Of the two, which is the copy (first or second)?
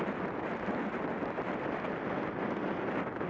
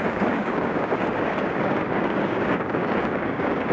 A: second